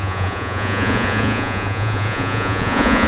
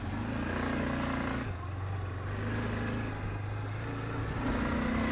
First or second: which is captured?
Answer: second